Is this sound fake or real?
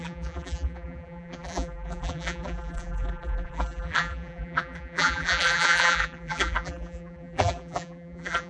fake